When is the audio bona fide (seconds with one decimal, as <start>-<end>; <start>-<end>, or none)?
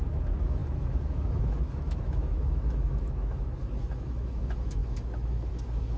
none